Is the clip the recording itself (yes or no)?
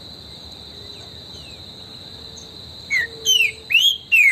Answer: yes